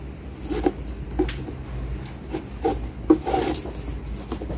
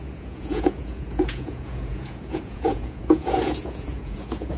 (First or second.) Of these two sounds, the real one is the first